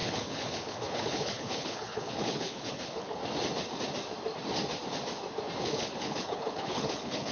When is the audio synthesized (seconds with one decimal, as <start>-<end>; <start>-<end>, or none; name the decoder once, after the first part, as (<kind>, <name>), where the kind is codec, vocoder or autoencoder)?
0.0-3.2 (codec, HILCodec); 5.6-7.3